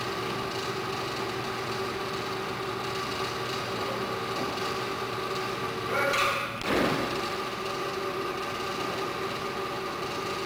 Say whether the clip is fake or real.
real